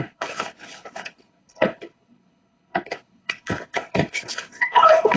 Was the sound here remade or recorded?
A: remade